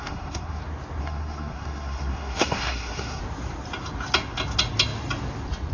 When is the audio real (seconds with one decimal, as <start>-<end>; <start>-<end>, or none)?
0.6-1.0; 3.2-5.7